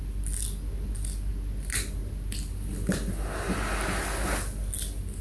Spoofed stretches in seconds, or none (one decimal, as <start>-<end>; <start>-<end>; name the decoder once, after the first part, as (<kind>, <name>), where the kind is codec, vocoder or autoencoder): none